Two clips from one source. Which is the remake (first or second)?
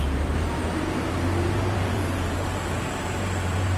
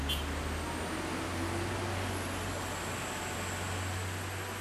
first